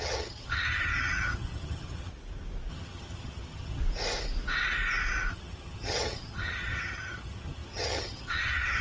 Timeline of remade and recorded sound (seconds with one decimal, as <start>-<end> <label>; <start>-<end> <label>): 0.0-2.1 remade; 2.1-2.7 recorded; 2.7-3.8 remade; 3.8-5.3 recorded; 5.3-8.8 remade